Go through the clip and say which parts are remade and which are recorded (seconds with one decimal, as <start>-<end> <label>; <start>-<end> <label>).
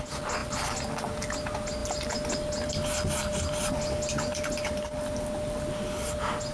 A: 0.0-6.5 recorded